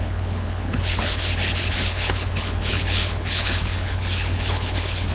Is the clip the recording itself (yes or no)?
no